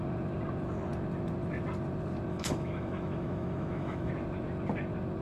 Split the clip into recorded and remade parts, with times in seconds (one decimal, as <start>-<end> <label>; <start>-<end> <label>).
0.0-2.3 recorded; 2.3-4.1 remade; 4.1-5.2 recorded